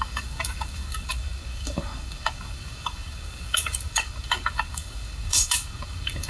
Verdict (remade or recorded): remade